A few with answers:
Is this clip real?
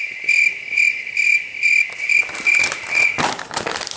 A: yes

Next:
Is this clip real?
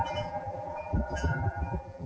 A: no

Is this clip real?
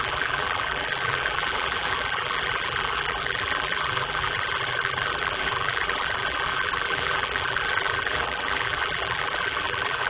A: no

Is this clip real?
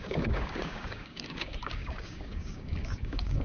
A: no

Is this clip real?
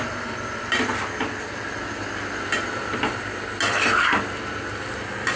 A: yes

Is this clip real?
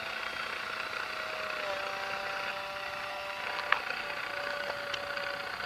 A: yes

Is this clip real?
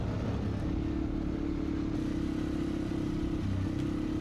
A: yes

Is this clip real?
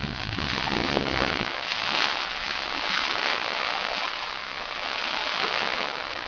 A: no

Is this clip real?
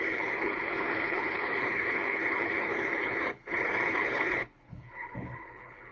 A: no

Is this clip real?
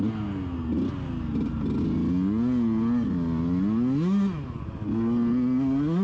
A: yes